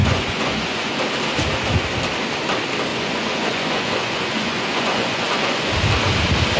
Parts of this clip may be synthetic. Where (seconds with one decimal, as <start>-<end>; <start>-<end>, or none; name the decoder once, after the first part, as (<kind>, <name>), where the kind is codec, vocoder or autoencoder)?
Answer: 0.0-1.0 (vocoder, Vocos); 2.9-5.7